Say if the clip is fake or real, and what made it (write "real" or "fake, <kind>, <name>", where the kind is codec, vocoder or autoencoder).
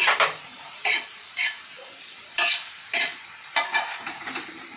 fake, vocoder, BigVGAN v2